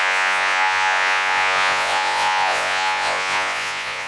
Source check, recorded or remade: remade